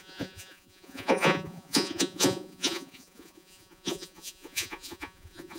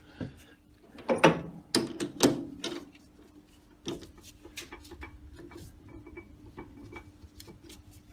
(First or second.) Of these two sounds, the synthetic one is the first